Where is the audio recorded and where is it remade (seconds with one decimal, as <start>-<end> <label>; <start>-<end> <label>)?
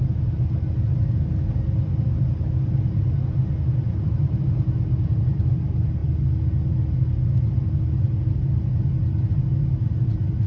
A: 0.0-10.5 recorded